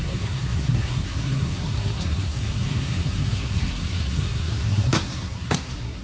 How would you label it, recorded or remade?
remade